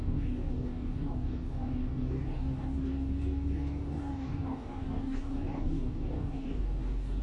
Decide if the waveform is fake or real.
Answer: fake